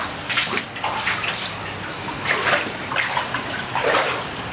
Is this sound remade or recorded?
recorded